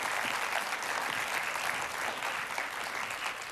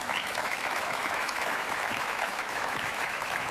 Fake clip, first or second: second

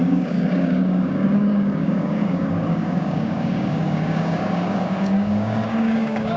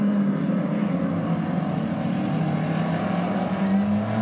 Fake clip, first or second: first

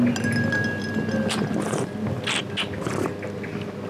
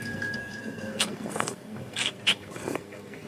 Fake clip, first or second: second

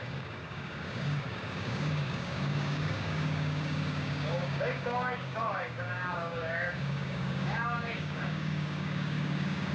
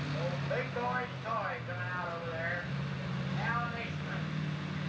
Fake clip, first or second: first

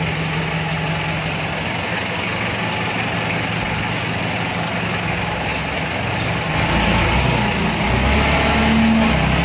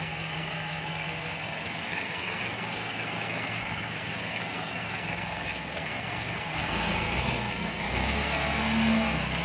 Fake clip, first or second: second